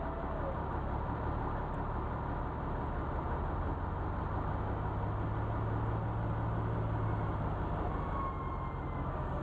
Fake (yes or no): no